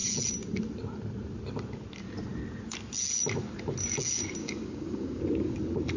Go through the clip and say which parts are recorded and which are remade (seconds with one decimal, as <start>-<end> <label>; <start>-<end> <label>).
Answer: 0.0-4.4 recorded; 4.4-5.2 remade; 5.2-6.0 recorded